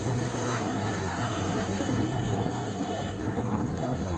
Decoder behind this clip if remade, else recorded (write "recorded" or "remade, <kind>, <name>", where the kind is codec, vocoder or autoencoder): remade, codec, SNAC